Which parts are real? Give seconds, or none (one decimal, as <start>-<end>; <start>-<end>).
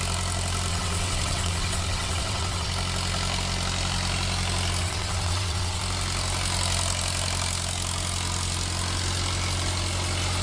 0.0-0.7; 2.7-4.8; 5.8-10.4